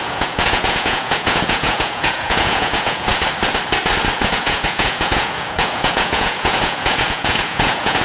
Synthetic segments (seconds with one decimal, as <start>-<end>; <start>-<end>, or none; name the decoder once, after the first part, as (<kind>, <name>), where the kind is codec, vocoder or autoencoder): 0.0-3.1 (vocoder, Vocos); 4.2-8.0